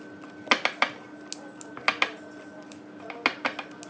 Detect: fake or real real